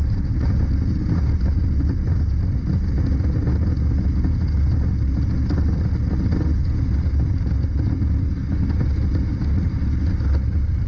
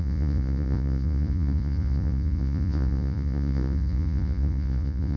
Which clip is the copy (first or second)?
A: second